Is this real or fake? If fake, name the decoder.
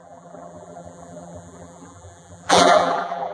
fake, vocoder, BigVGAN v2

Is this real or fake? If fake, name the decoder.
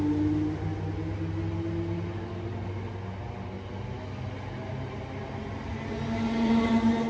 real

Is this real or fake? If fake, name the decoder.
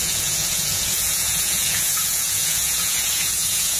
fake, vocoder, Vocos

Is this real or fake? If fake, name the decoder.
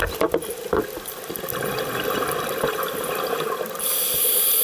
real